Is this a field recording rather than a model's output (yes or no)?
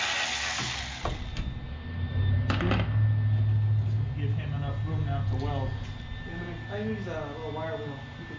yes